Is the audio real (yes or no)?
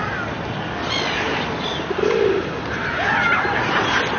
yes